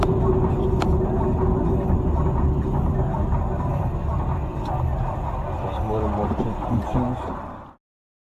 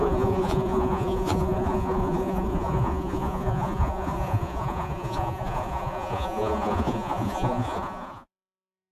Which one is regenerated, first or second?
second